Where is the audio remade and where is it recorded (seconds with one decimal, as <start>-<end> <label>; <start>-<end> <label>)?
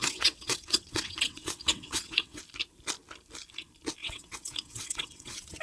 0.0-2.4 remade; 2.4-4.0 recorded; 4.0-5.6 remade